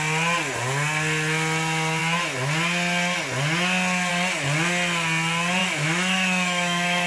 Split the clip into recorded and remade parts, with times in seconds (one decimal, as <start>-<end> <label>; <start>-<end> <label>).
0.0-5.6 recorded; 5.6-7.1 remade